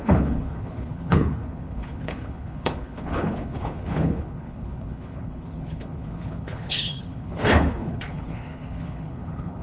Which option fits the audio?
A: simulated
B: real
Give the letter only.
A